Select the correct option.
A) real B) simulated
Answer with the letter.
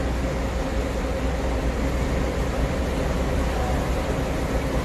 A